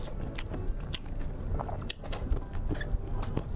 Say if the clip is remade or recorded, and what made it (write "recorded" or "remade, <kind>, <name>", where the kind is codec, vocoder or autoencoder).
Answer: recorded